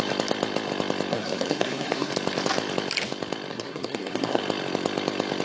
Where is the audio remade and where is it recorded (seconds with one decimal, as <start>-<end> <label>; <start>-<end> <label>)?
0.0-1.1 recorded; 1.1-2.1 remade; 2.1-3.5 recorded; 3.5-4.4 remade; 4.4-5.4 recorded